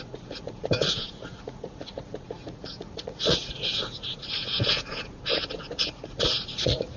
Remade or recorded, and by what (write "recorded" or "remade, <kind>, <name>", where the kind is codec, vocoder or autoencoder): remade, vocoder, Vocos